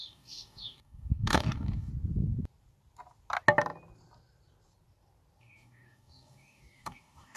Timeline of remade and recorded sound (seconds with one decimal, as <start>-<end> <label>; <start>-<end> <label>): 0.0-1.9 remade; 1.9-5.4 recorded; 5.4-7.4 remade